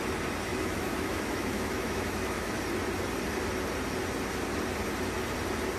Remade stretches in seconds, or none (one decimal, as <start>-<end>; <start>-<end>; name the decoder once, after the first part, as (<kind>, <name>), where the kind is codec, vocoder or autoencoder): 0.5-2.5 (autoencoder, DAC-VAE)